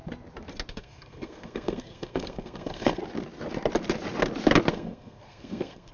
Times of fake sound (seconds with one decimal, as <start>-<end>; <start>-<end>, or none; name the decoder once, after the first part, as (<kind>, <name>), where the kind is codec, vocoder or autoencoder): 0.7-3.0 (codec, SNAC); 4.7-5.9